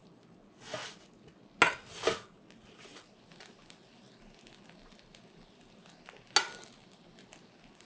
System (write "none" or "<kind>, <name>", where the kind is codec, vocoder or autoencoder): none